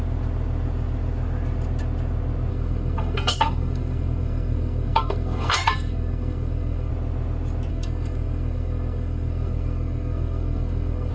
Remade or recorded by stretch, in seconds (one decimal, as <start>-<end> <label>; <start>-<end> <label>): 0.0-2.5 recorded; 2.5-6.9 remade; 6.9-7.7 recorded; 7.7-11.1 remade